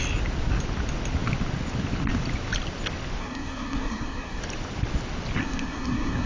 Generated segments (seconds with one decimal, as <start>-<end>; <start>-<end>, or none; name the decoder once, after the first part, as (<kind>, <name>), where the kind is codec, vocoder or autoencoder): 3.2-4.4 (codec, SNAC); 5.4-6.3